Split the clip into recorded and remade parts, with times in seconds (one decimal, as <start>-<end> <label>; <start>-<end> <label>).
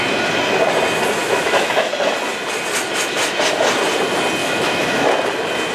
0.0-1.2 recorded; 1.2-1.9 remade; 1.9-4.4 recorded; 4.4-5.1 remade; 5.1-5.7 recorded